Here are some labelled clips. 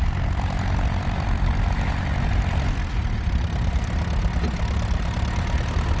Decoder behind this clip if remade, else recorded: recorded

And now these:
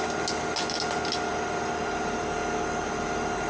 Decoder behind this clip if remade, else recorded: recorded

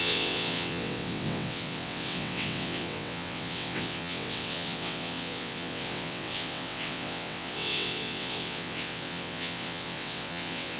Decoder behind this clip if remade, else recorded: remade, vocoder, WaveNeXt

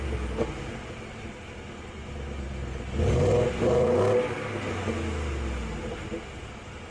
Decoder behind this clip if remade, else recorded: recorded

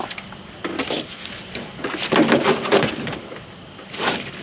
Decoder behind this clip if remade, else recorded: recorded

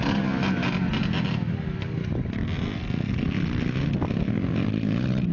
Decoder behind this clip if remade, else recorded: recorded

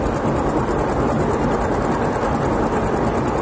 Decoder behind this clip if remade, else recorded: recorded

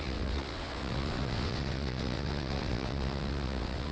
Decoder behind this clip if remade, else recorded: remade, vocoder, WaveNeXt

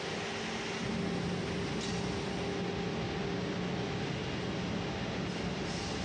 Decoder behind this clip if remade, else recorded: recorded